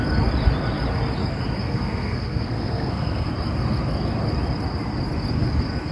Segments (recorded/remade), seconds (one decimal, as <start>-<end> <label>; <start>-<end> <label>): 0.0-1.6 recorded; 1.6-3.3 remade; 3.3-5.9 recorded

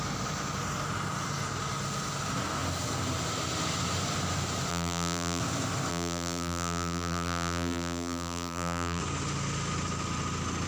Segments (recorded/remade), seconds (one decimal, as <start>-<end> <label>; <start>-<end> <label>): 0.0-4.7 recorded; 4.7-5.4 remade; 5.4-5.9 recorded; 5.9-9.0 remade; 9.0-10.7 recorded